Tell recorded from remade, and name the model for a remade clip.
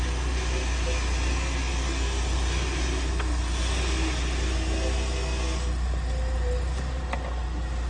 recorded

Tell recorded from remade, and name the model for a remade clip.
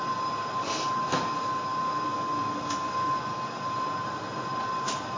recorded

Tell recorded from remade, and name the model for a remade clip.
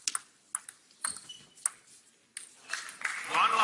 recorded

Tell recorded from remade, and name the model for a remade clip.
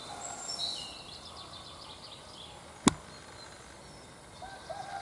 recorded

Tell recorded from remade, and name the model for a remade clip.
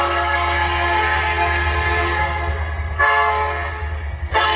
remade, codec, SNAC